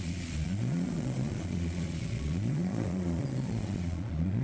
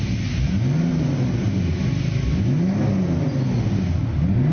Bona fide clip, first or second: second